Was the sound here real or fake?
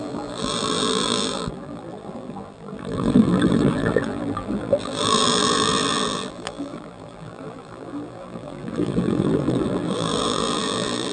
fake